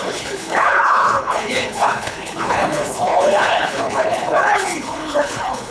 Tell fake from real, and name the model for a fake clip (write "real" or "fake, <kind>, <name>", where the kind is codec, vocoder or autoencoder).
fake, codec, HILCodec